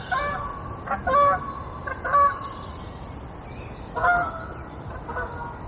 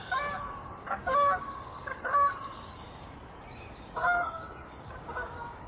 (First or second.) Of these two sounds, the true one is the first